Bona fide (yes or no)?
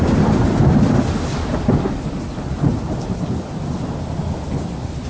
yes